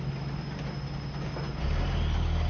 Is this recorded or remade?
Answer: recorded